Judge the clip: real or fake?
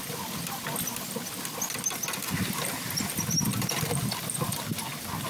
real